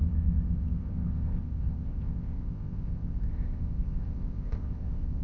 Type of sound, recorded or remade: remade